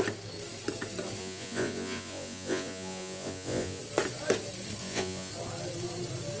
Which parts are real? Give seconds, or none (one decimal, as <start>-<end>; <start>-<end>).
0.0-1.2; 3.8-4.8; 5.3-6.4